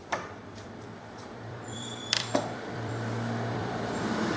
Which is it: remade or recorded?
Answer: remade